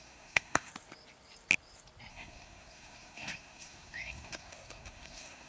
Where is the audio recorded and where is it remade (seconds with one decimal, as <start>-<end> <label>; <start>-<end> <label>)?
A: 0.0-0.7 remade; 0.7-2.1 recorded; 2.1-5.5 remade

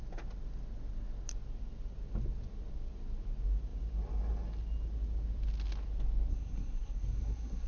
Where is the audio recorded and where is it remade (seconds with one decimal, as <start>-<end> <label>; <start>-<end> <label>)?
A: 0.0-6.3 recorded; 6.3-7.7 remade

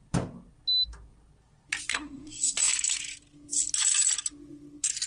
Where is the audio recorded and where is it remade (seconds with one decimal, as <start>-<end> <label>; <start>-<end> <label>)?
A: 0.0-1.9 recorded; 1.9-2.7 remade; 2.7-5.1 recorded